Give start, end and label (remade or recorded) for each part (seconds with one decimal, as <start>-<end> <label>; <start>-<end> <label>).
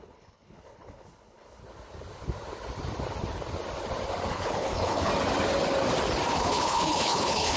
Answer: 0.0-1.6 remade; 1.6-4.3 recorded; 4.3-5.1 remade; 5.1-6.3 recorded; 6.3-7.6 remade